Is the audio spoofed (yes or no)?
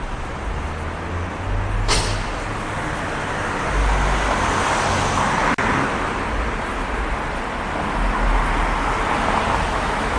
no